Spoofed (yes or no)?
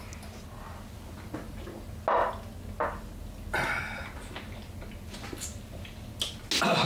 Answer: no